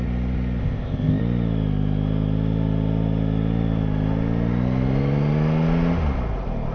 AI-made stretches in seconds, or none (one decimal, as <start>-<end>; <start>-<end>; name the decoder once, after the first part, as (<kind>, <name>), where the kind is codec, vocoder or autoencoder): 0.6-1.2 (codec, ZipCodec)